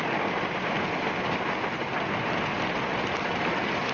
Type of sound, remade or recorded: recorded